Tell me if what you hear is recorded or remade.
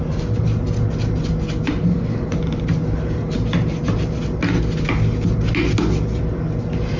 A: recorded